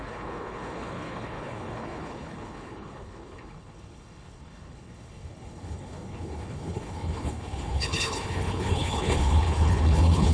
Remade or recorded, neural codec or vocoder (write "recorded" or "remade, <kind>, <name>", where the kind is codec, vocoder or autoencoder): remade, codec, HILCodec